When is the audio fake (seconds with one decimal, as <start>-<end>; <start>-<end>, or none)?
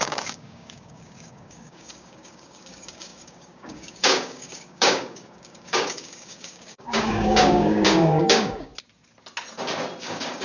0.0-8.7; 10.0-10.4